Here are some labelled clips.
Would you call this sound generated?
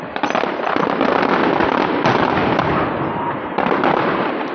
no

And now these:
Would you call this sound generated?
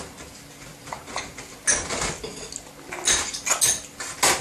no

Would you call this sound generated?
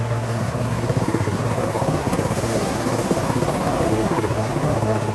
yes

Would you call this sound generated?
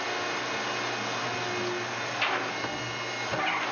no